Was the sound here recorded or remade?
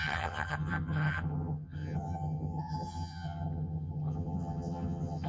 remade